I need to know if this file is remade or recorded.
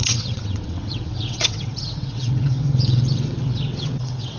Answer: remade